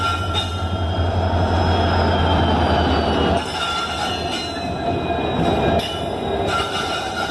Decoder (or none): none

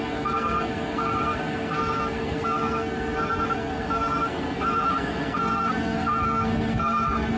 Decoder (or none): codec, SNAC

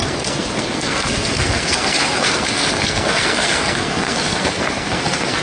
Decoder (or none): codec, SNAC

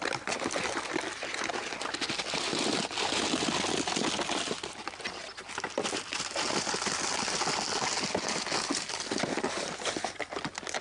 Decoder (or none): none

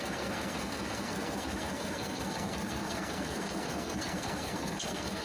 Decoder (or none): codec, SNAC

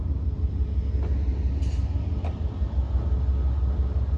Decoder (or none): none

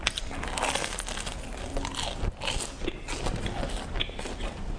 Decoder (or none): none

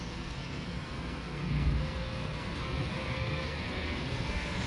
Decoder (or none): codec, SNAC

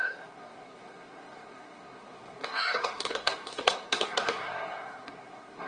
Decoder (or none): codec, SNAC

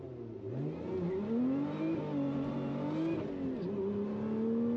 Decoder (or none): none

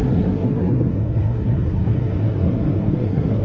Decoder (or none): codec, SNAC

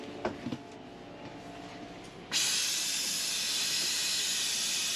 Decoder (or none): none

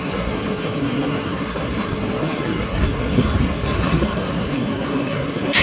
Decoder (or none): codec, SNAC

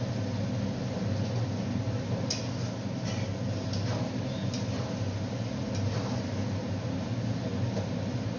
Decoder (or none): none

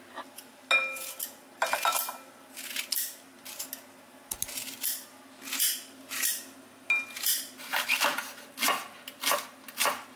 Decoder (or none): none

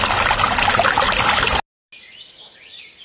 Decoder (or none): none